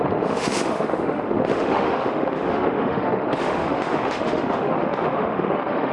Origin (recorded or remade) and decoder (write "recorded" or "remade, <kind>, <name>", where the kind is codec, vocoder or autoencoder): remade, autoencoder, DAC-VAE